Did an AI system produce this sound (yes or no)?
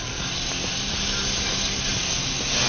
no